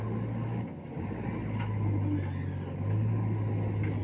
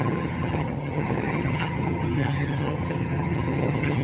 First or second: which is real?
first